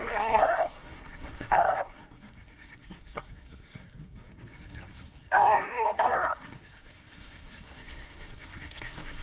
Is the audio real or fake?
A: fake